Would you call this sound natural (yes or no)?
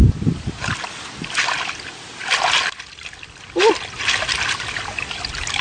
yes